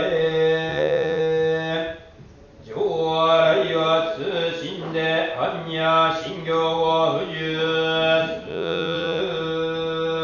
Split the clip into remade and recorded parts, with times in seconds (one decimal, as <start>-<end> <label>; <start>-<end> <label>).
0.0-0.7 recorded; 0.7-1.2 remade; 1.2-8.5 recorded; 8.5-9.2 remade; 9.2-10.2 recorded